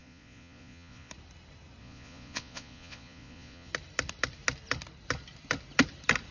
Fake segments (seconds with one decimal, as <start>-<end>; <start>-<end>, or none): 0.0-1.1; 1.8-3.7